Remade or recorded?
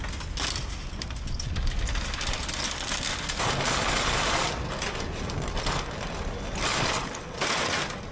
recorded